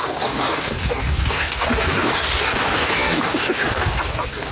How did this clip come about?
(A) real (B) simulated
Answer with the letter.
B